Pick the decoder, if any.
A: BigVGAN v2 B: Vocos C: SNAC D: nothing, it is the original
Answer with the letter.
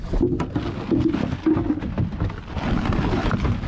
D